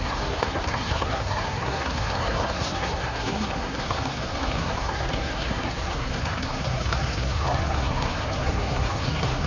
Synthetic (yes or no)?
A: yes